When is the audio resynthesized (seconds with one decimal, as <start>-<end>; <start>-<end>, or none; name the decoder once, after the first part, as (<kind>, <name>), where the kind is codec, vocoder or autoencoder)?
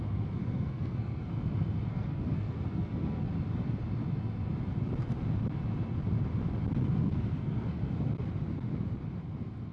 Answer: 0.4-1.3 (codec, SNAC); 1.9-3.3; 6.8-7.9